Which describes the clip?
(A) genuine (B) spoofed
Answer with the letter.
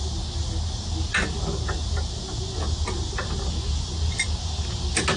A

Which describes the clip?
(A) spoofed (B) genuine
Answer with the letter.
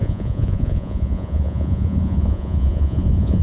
A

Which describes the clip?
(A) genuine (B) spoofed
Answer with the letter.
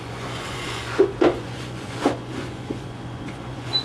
B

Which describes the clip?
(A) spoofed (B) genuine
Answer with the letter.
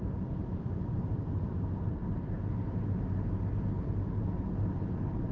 B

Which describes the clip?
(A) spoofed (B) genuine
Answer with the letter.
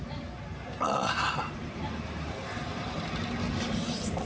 B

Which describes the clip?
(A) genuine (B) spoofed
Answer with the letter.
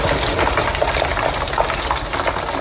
A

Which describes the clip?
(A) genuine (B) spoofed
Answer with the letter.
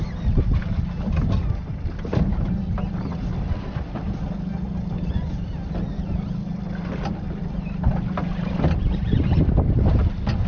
A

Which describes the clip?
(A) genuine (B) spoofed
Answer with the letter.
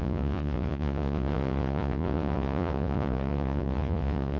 B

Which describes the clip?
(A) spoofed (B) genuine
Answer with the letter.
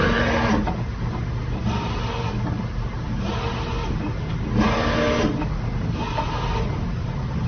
B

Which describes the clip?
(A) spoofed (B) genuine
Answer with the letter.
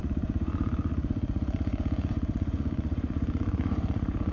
A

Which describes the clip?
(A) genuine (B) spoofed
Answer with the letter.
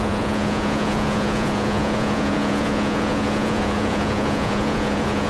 B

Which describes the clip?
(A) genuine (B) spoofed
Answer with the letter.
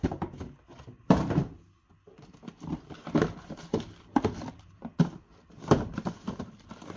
A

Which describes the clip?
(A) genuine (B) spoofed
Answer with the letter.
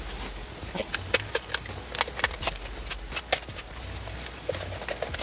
A